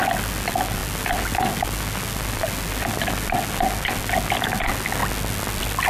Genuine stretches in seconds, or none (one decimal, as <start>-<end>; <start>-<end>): 0.0-5.9